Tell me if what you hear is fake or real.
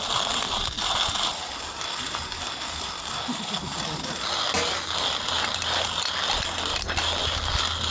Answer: real